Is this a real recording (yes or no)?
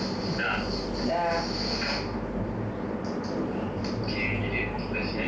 yes